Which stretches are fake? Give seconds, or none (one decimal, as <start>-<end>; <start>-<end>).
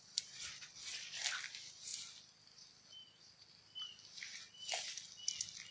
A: none